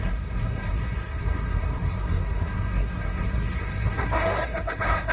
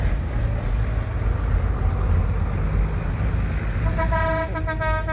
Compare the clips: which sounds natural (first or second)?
second